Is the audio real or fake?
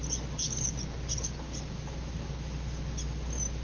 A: real